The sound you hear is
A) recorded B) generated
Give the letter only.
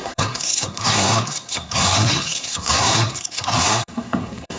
B